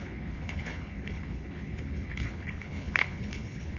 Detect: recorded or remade remade